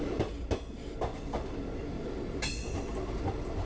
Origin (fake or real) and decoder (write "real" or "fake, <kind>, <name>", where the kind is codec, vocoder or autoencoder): real